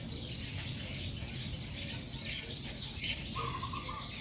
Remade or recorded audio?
recorded